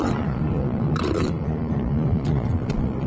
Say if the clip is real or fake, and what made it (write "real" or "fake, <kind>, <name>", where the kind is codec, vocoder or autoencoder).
fake, vocoder, Vocos